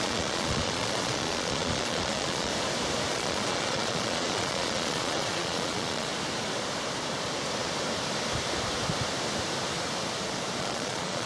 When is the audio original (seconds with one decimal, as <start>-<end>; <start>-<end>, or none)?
2.5-3.1; 6.1-10.6